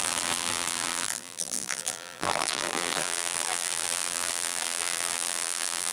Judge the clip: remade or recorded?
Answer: remade